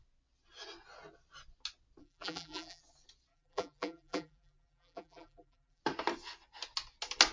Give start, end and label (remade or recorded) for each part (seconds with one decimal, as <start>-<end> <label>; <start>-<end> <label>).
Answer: 0.0-2.0 recorded; 2.0-2.8 remade; 2.8-3.3 recorded; 3.3-5.8 remade; 5.8-7.3 recorded